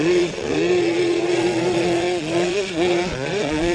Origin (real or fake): fake